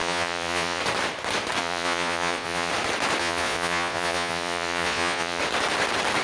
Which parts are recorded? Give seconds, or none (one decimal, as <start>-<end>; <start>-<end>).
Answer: 0.8-1.6; 2.7-3.2; 5.4-6.2